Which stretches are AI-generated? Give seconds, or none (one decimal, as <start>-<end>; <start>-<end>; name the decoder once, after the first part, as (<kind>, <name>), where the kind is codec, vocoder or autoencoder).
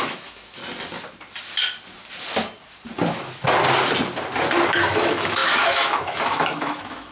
0.0-0.6 (autoencoder, DAC-VAE); 4.9-7.1